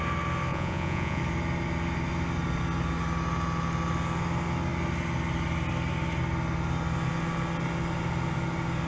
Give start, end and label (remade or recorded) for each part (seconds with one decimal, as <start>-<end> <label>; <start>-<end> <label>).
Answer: 0.0-0.5 recorded; 0.5-1.2 remade; 1.2-8.9 recorded